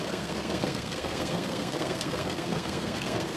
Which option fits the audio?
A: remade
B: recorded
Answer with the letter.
A